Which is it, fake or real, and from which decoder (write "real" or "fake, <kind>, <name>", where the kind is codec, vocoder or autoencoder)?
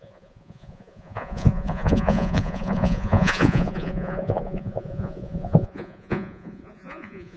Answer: fake, vocoder, Vocos